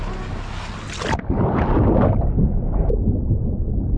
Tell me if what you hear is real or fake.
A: real